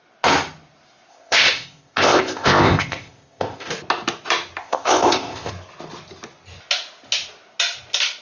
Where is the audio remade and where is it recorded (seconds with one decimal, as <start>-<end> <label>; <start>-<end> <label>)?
0.0-1.1 recorded; 1.1-3.7 remade; 3.7-4.6 recorded; 4.6-5.5 remade; 5.5-8.2 recorded